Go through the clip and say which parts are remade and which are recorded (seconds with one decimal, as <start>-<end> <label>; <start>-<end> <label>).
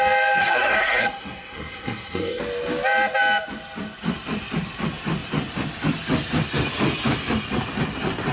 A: 0.0-0.4 recorded; 0.4-2.4 remade; 2.4-8.3 recorded